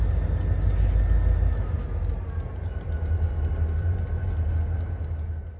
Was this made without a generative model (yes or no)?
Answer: yes